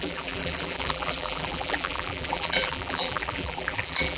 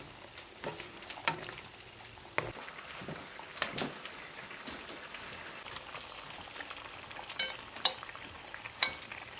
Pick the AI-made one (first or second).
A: first